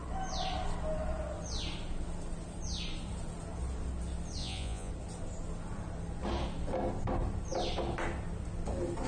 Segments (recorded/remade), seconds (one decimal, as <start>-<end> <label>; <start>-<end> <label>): 0.0-4.4 recorded; 4.4-4.9 remade; 4.9-9.1 recorded